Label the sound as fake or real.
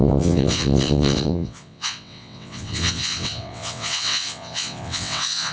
fake